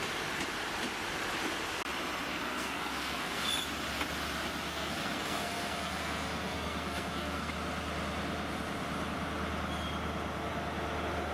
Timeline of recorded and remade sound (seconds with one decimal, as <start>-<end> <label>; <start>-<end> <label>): 0.0-2.3 recorded; 2.3-3.5 remade; 3.5-4.7 recorded; 4.7-7.5 remade; 7.5-11.3 recorded